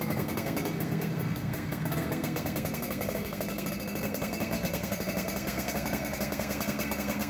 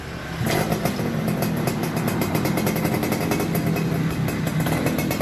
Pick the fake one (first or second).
first